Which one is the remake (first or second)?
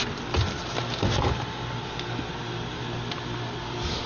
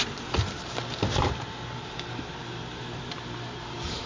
second